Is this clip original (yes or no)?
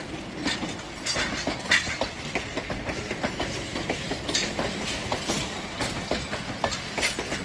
yes